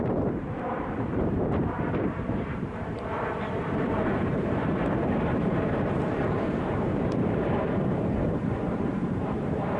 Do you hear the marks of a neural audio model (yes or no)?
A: yes